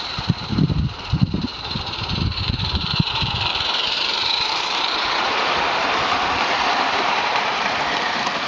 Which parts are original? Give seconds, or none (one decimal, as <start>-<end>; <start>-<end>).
none

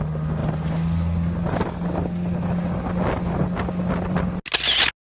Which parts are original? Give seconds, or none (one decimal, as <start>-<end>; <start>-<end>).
0.0-5.0

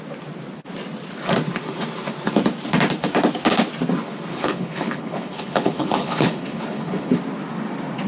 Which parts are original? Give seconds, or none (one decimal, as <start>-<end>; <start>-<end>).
0.0-4.3; 7.2-8.1

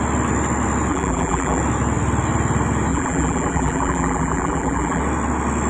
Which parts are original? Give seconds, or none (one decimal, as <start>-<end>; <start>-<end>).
0.0-0.9; 1.6-2.9; 5.0-5.7

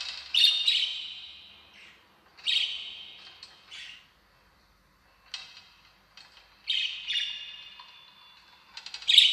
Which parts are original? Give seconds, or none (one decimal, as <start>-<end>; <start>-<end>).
0.0-0.9; 1.5-9.3